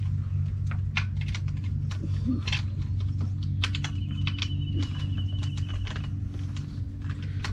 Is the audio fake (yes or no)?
no